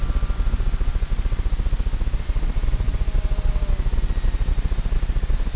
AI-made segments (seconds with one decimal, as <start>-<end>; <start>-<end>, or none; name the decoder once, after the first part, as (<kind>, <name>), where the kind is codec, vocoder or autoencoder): none